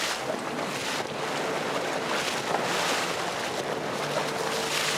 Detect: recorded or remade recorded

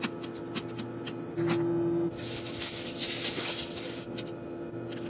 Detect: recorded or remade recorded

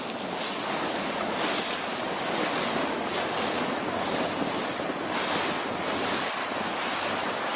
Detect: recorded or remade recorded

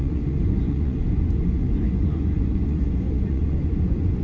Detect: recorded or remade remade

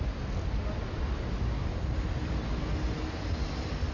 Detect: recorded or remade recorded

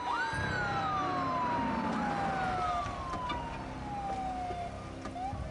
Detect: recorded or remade recorded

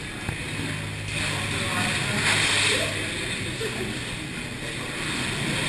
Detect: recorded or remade recorded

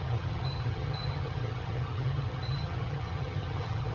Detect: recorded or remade remade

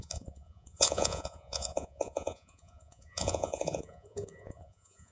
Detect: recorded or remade remade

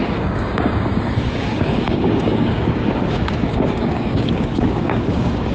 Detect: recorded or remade remade